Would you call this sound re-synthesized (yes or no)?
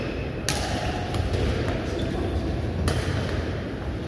no